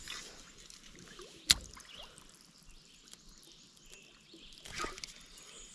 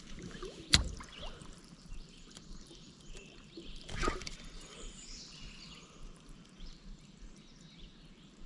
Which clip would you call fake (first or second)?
second